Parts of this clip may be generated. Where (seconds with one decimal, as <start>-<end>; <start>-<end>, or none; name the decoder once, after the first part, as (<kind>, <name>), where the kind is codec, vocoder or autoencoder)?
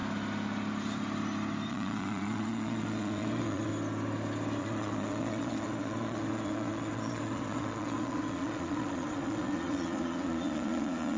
1.7-3.7 (vocoder, Vocos); 4.6-11.2